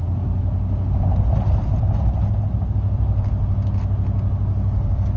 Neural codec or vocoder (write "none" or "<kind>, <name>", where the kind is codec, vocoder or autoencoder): none